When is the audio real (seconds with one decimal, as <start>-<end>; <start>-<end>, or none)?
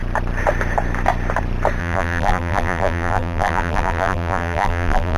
0.0-1.8